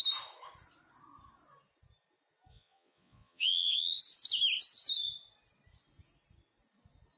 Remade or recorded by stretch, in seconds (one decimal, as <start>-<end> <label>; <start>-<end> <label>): 0.0-2.5 recorded; 2.5-4.0 remade; 4.0-7.2 recorded